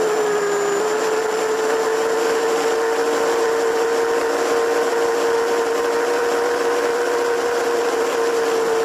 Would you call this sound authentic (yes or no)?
yes